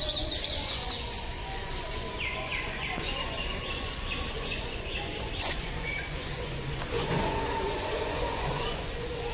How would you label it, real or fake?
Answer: fake